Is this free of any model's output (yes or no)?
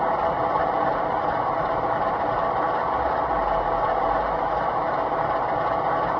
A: yes